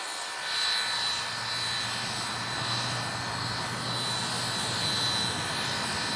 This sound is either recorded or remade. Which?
recorded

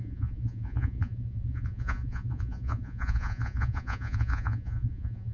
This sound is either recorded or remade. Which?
remade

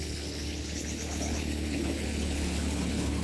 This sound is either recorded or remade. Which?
remade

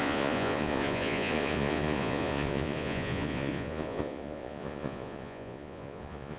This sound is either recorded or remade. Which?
remade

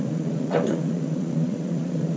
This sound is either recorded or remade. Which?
remade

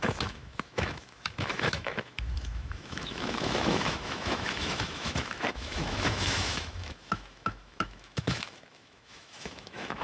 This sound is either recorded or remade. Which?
remade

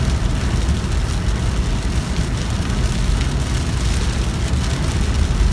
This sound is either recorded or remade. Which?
recorded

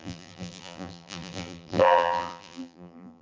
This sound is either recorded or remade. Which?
remade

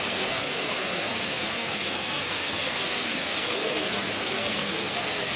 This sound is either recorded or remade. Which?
remade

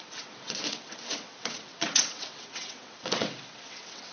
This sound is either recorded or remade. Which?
remade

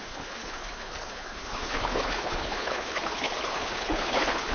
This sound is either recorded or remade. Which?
remade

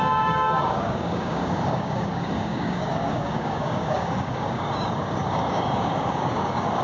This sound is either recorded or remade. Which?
remade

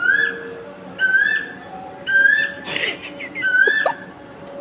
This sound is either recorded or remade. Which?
recorded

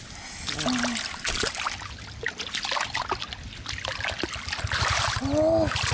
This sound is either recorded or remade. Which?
recorded